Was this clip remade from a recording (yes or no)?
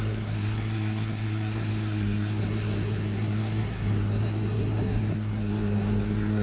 yes